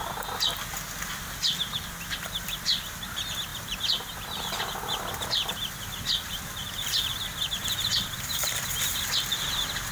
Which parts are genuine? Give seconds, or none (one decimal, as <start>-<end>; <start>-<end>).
0.0-9.9